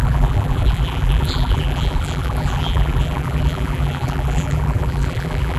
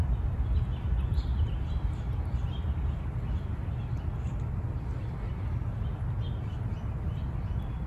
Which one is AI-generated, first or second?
first